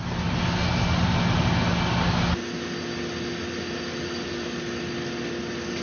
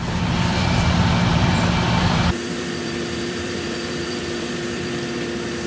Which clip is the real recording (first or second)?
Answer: first